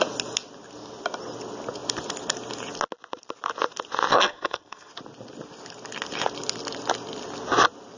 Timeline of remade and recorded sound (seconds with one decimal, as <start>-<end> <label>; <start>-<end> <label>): 0.0-4.1 recorded; 4.1-4.9 remade; 4.9-8.0 recorded